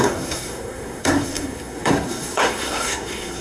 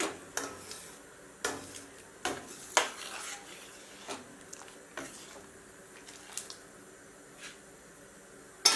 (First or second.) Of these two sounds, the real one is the second